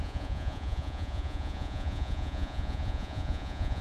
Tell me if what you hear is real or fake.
fake